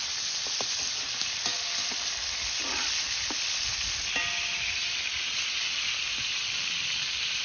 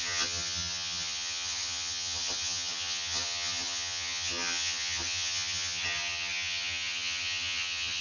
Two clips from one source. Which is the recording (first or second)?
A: first